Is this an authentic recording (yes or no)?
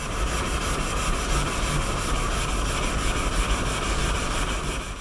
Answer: yes